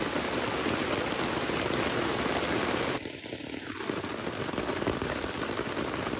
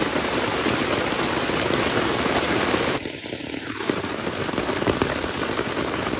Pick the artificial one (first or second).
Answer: second